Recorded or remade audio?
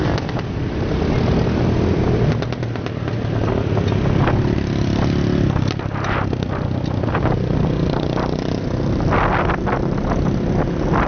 recorded